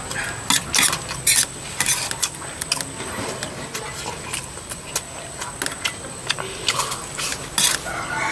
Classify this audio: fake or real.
real